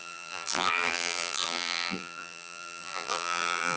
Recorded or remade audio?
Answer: remade